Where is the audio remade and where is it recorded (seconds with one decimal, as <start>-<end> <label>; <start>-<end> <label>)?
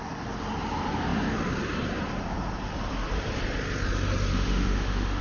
0.0-4.3 recorded; 4.3-5.2 remade